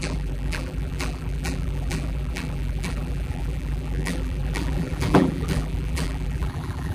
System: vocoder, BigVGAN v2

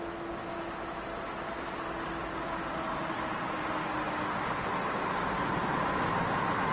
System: none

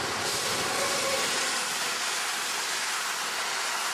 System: none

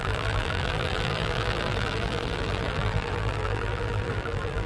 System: vocoder, BigVGAN v2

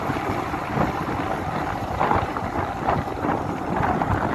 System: none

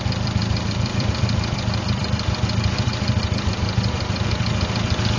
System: vocoder, BigVGAN v2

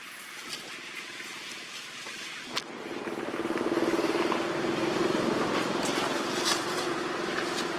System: none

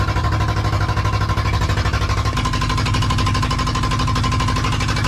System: none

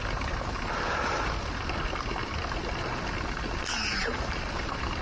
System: none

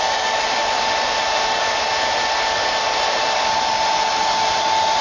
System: none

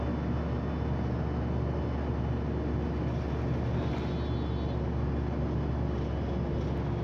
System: none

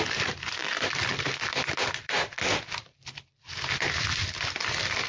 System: vocoder, BigVGAN v2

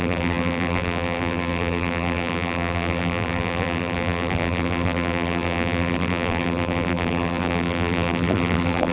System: vocoder, BigVGAN v2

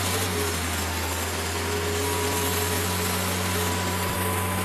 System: none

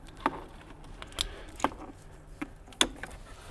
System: none